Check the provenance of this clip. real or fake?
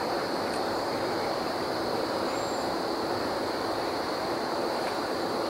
fake